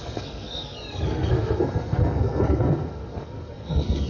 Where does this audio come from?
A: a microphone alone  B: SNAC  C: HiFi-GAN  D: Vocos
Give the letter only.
B